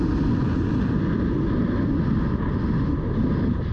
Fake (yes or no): no